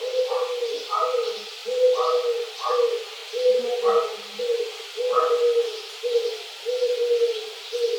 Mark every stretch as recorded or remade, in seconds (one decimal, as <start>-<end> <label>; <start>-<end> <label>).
0.0-8.0 recorded